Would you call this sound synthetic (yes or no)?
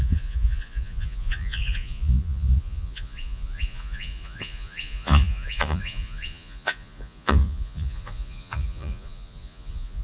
yes